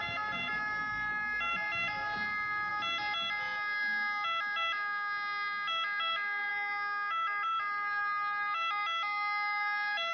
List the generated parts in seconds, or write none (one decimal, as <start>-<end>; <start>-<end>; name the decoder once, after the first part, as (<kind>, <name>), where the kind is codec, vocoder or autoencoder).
none

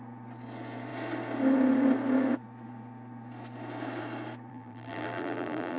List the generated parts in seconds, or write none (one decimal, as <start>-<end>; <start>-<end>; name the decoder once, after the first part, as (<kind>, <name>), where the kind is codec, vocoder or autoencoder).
4.5-5.8 (vocoder, BigVGAN v2)

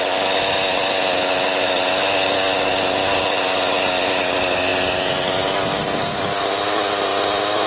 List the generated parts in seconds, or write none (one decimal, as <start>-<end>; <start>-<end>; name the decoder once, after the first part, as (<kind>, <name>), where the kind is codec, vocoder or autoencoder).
none

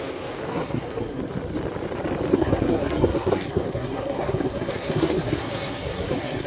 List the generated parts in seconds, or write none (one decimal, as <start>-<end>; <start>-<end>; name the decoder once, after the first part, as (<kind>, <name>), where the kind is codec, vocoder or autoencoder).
0.5-1.2 (codec, SNAC); 2.3-6.5

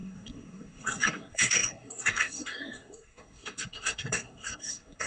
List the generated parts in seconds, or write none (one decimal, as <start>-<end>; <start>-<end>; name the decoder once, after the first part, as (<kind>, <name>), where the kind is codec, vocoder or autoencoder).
0.0-5.1 (codec, SNAC)

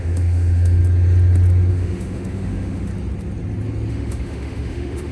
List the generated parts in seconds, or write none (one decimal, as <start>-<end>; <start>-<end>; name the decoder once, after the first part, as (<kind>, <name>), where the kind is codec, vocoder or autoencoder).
0.0-0.8 (autoencoder, DAC-VAE); 1.7-2.9; 3.9-5.1